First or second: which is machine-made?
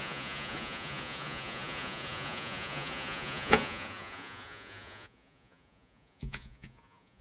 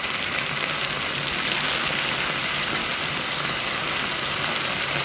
first